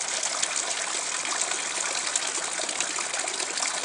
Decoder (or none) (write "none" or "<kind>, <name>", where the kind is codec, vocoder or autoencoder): none